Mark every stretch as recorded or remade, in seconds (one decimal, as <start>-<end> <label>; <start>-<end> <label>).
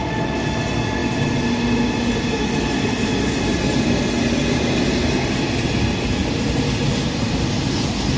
0.0-8.2 recorded